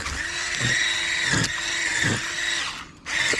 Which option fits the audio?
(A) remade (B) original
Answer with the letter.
B